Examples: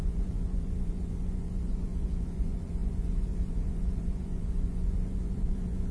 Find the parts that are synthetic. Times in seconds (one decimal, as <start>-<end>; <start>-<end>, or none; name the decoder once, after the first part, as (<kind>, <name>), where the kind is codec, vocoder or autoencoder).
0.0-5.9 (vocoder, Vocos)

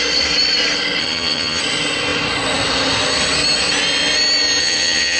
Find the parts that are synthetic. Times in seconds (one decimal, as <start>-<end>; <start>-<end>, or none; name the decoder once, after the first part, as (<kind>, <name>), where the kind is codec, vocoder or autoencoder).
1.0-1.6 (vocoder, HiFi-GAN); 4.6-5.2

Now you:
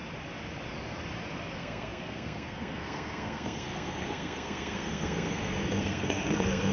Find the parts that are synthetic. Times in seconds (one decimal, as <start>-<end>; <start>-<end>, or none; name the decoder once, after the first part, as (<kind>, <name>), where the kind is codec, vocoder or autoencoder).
1.5-6.7 (codec, SNAC)

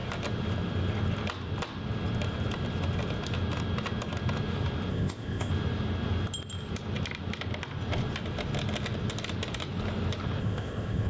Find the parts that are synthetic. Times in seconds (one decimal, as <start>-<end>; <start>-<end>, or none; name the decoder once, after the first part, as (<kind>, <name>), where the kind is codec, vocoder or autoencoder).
4.9-5.5 (codec, ZipCodec); 10.4-11.1